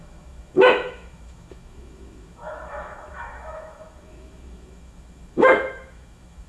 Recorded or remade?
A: remade